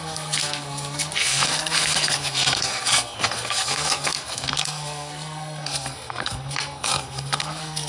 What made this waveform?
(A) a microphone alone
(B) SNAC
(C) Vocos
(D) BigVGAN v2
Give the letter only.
B